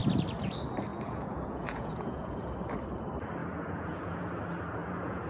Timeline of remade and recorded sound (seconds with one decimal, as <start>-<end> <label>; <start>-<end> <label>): 0.0-0.9 recorded; 0.9-2.5 remade; 2.5-3.4 recorded; 3.4-4.3 remade; 4.3-4.8 recorded; 4.8-5.3 remade